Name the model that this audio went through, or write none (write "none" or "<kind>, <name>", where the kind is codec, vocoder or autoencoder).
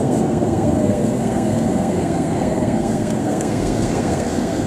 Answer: codec, SNAC